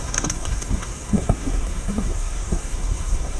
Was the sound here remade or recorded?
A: remade